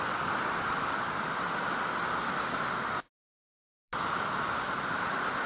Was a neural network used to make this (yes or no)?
no